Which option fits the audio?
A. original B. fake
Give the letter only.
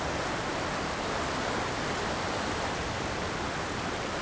A